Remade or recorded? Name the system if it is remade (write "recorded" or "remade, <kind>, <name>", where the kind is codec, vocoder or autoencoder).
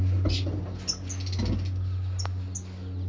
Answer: recorded